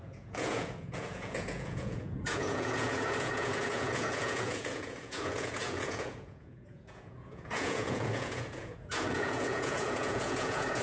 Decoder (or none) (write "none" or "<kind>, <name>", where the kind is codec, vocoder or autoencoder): vocoder, Vocos